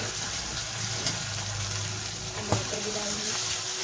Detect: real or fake real